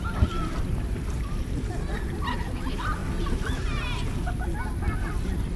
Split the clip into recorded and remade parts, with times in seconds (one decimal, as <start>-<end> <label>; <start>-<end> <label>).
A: 0.0-5.6 recorded